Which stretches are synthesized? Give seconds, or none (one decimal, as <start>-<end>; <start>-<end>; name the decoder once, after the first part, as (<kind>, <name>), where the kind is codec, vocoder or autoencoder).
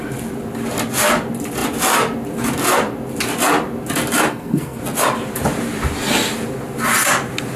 4.3-4.8 (codec, SNAC)